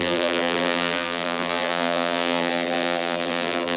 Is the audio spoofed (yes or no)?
yes